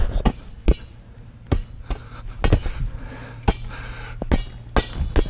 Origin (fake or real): real